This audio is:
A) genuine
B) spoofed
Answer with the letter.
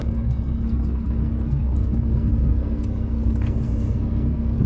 B